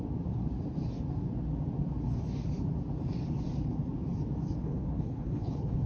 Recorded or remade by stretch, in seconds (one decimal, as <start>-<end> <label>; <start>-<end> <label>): 0.0-4.6 recorded; 4.6-5.9 remade